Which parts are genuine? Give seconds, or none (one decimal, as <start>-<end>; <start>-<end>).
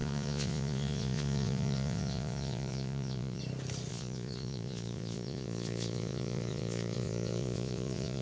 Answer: 3.4-3.9